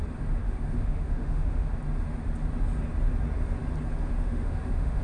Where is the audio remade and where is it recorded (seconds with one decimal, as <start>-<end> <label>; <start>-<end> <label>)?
0.0-0.4 recorded; 0.4-1.7 remade; 1.7-4.1 recorded; 4.1-5.0 remade

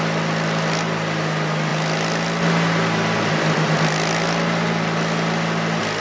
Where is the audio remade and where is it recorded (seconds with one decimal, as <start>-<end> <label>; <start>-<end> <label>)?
0.0-6.0 recorded